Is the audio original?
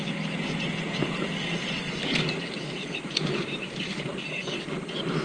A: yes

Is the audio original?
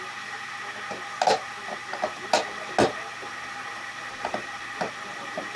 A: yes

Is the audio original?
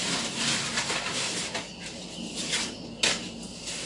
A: yes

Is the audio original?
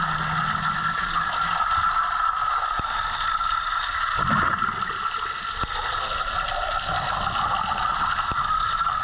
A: yes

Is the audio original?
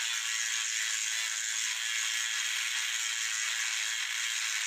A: yes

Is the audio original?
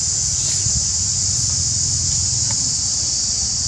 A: yes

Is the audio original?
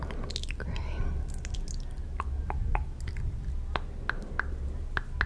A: yes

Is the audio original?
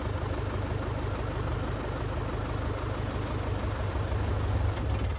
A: yes